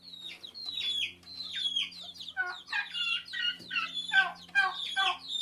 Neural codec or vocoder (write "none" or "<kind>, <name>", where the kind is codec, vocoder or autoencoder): none